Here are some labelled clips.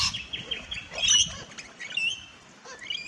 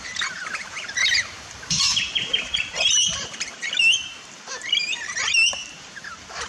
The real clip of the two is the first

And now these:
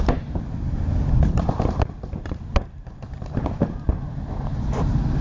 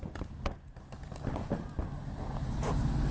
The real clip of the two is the second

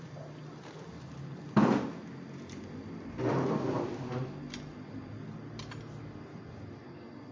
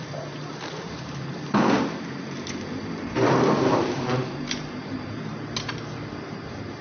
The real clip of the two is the first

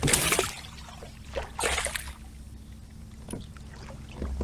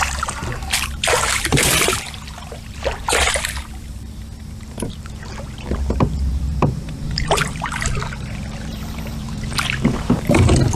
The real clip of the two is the first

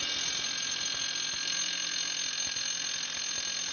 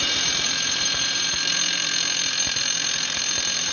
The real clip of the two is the first